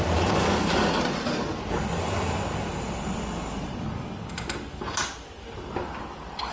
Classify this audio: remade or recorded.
recorded